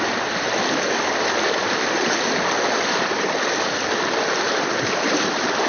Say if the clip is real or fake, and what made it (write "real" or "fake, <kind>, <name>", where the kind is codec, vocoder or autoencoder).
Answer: real